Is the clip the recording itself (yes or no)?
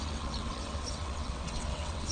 no